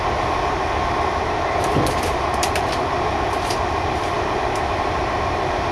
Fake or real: fake